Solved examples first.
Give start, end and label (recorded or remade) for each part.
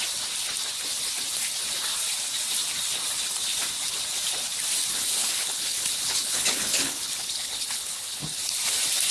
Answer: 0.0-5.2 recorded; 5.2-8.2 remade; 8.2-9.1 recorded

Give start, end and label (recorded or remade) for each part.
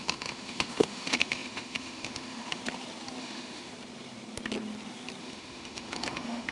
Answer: 0.0-2.6 remade; 2.6-3.2 recorded; 3.2-3.7 remade; 3.7-5.2 recorded; 5.2-6.5 remade